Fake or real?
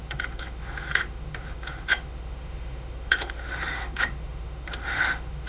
fake